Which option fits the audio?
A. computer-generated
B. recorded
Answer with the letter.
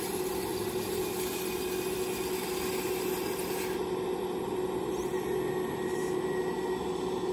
B